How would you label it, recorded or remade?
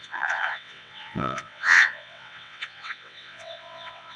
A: remade